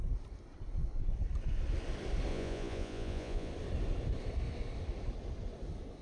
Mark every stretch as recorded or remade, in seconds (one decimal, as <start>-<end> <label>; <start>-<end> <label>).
0.0-2.3 recorded; 2.3-3.5 remade; 3.5-6.0 recorded